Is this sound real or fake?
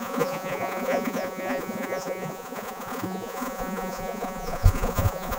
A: fake